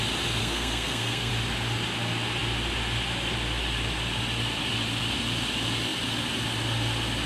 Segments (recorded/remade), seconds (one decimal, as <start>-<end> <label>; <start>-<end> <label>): 0.0-0.4 recorded; 0.4-1.3 remade; 1.3-7.3 recorded